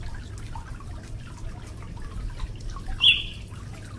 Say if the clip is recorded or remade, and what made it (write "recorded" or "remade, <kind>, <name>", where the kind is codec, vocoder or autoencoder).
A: recorded